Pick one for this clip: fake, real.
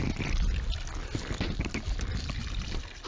real